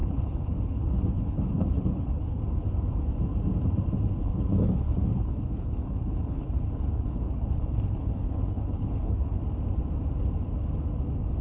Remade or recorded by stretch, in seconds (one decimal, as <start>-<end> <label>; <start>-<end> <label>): 0.0-2.4 remade; 2.4-4.2 recorded; 4.2-9.4 remade; 9.4-11.4 recorded